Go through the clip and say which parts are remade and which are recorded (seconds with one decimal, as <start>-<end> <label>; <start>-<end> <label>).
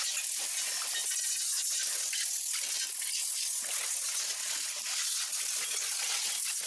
0.0-6.7 recorded